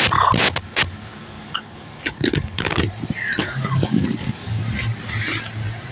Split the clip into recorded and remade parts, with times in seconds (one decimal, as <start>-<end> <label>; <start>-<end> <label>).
0.0-1.2 recorded; 1.2-2.8 remade; 2.8-3.4 recorded; 3.4-4.6 remade; 4.6-5.9 recorded